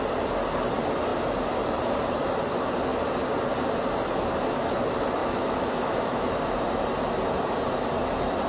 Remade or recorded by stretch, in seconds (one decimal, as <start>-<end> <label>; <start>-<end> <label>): 0.0-5.2 recorded; 5.2-6.3 remade; 6.3-8.5 recorded